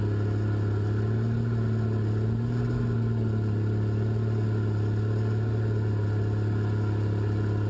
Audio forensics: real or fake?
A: real